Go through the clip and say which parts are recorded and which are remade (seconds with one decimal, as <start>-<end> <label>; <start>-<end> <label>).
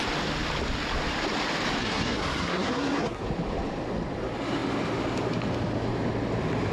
0.0-1.8 recorded; 1.8-3.2 remade; 3.2-6.7 recorded